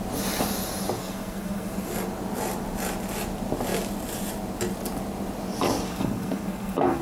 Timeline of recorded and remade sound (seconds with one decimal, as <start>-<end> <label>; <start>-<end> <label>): 0.0-1.0 recorded; 1.0-1.9 remade; 1.9-5.9 recorded; 5.9-7.0 remade